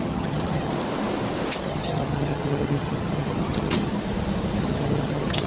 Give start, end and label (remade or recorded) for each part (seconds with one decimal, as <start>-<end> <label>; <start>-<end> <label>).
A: 0.0-0.7 remade; 0.7-1.6 recorded; 1.6-3.9 remade; 3.9-4.6 recorded; 4.6-5.5 remade